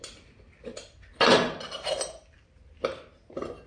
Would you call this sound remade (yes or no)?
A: no